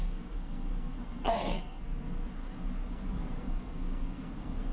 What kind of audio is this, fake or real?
fake